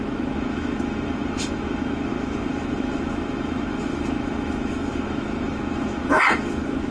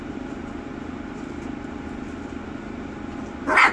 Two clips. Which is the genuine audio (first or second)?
second